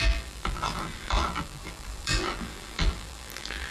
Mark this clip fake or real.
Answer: fake